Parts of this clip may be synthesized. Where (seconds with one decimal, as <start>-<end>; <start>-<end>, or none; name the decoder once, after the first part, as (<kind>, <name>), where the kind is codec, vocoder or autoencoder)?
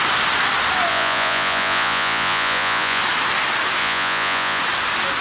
0.9-3.0 (vocoder, Vocos); 3.8-4.6